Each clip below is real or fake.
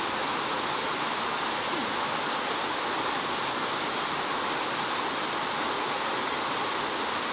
real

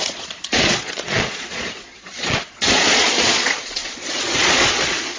fake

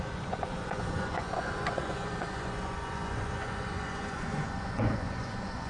fake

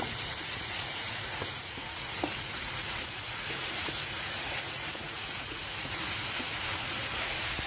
fake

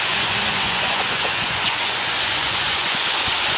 fake